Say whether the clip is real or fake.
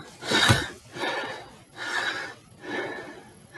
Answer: fake